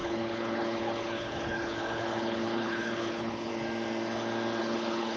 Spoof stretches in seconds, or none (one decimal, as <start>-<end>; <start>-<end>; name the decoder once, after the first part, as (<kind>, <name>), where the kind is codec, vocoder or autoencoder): 0.0-3.5 (codec, HILCodec); 4.6-5.2